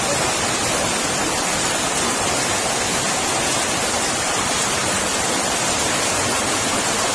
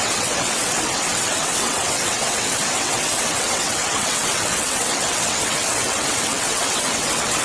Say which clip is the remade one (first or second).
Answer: second